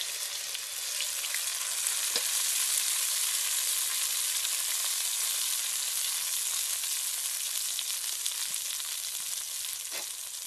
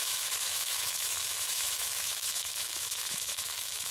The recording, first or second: first